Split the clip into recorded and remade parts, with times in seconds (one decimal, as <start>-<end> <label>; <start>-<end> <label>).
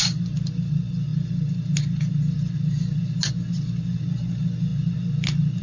0.0-5.6 recorded